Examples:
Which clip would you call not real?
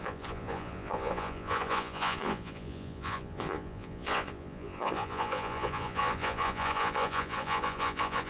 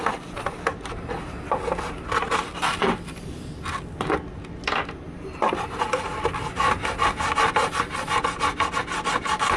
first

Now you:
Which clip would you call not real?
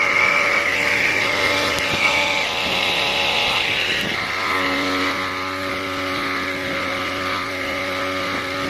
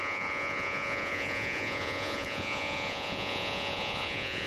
second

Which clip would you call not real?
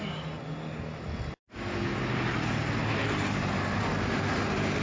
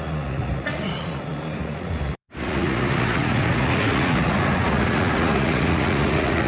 second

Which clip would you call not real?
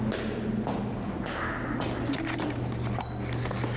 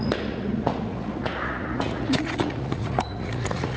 second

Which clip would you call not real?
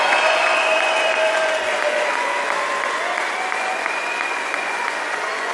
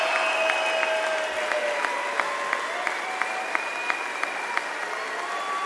first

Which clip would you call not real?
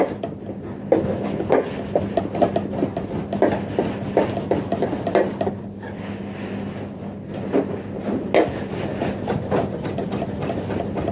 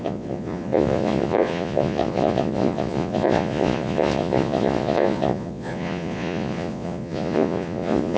second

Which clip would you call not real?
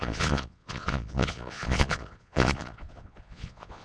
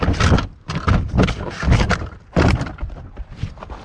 first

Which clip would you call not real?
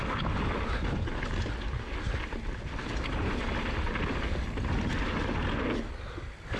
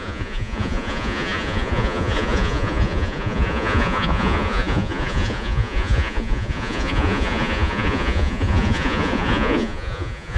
second